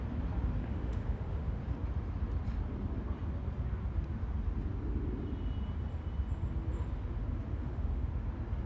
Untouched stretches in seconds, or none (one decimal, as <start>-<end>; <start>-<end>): 0.0-0.6; 1.6-7.5; 8.1-8.7